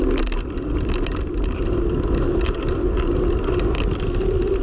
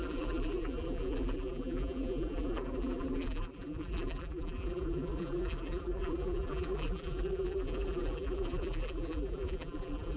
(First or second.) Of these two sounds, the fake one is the second